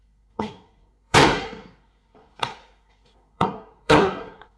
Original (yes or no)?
no